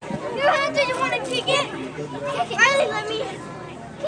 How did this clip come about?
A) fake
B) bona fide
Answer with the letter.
B